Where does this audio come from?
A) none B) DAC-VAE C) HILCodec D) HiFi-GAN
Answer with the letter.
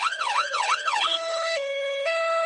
C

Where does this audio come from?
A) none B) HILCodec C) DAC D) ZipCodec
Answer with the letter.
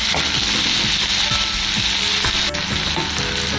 A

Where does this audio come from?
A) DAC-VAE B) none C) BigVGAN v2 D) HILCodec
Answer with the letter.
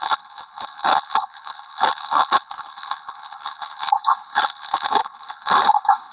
D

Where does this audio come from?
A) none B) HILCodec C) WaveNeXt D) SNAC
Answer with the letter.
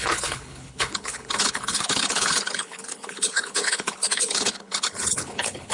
B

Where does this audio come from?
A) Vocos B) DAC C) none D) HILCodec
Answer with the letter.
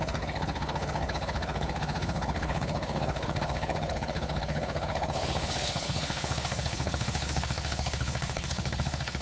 D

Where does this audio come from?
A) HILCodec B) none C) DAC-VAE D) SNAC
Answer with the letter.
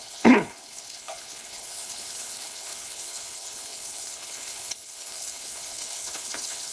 A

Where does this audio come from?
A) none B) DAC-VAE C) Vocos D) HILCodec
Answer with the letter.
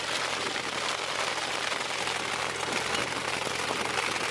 A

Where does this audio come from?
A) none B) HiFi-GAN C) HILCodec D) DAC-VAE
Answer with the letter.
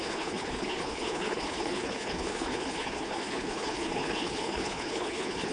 C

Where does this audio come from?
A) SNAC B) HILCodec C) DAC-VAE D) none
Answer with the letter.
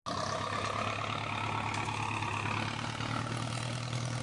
D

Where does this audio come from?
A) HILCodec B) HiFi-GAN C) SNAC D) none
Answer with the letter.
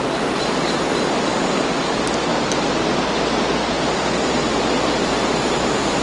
D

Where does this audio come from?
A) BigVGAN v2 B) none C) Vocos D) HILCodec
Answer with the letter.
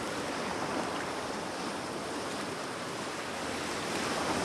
B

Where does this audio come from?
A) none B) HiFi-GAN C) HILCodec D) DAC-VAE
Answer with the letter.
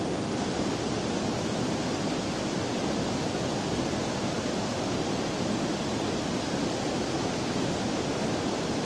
A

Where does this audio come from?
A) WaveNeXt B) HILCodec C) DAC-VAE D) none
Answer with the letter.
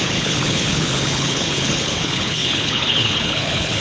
B